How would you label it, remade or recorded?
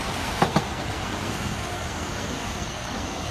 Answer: remade